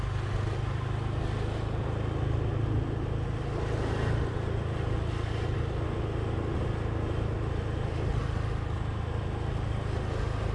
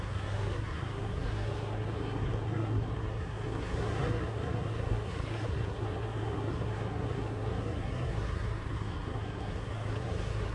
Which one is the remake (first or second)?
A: second